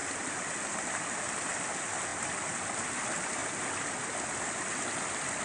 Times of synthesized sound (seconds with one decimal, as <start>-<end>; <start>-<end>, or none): 0.0-1.2; 2.1-3.0